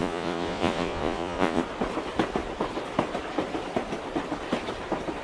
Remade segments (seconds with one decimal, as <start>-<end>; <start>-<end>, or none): 0.0-1.6